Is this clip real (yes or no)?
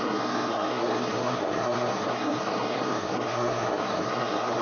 no